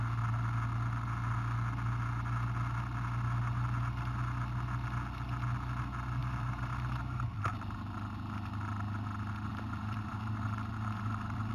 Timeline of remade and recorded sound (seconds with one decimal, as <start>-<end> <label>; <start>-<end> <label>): 0.0-6.2 recorded; 6.2-7.0 remade; 7.0-9.5 recorded; 9.5-11.5 remade